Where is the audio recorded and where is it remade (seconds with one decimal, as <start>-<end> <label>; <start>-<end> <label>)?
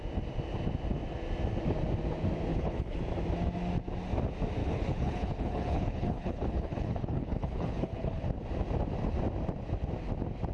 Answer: 0.0-2.5 recorded; 2.5-3.0 remade; 3.0-4.6 recorded; 4.6-8.2 remade; 8.2-10.5 recorded